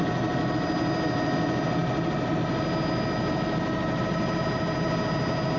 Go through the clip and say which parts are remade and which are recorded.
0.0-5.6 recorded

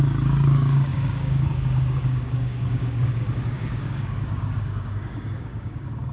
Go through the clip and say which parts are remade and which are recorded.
0.0-6.1 remade

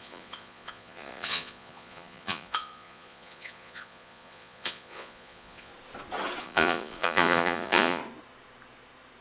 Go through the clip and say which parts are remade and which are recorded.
0.0-5.7 remade; 5.7-6.4 recorded; 6.4-8.0 remade; 8.0-9.2 recorded

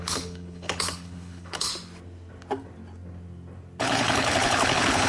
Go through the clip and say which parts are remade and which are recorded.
0.0-1.7 remade; 1.7-3.8 recorded; 3.8-5.1 remade

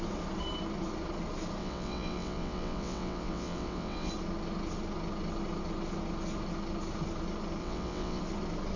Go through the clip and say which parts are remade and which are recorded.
0.0-1.6 recorded; 1.6-4.1 remade; 4.1-7.6 recorded; 7.6-8.2 remade; 8.2-8.8 recorded

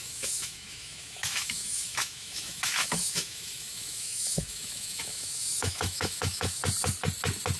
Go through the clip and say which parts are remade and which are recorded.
0.0-6.6 remade; 6.6-7.6 recorded

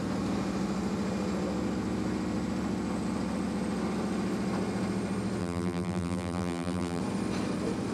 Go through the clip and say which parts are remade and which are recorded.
0.0-5.4 recorded; 5.4-7.0 remade; 7.0-7.9 recorded